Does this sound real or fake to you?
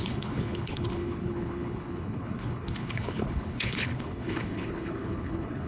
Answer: fake